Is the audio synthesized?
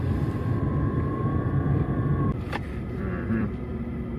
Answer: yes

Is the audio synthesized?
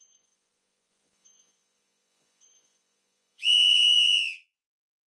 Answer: yes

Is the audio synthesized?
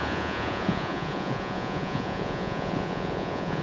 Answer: yes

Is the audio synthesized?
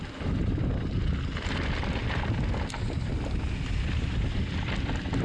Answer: no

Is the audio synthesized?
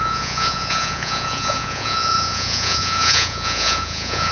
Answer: yes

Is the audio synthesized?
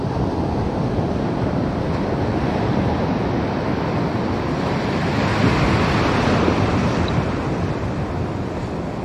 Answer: no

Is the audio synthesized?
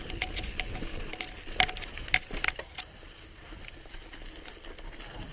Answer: no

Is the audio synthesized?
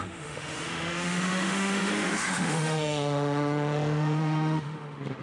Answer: yes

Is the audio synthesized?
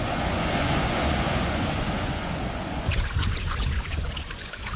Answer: yes